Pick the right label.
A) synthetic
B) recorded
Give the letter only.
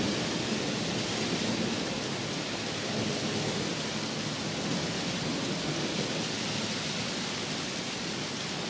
B